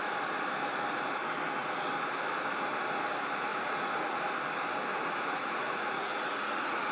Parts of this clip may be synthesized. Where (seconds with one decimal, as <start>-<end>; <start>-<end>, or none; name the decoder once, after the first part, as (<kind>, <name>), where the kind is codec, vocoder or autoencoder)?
3.5-4.2 (vocoder, Vocos); 4.9-6.9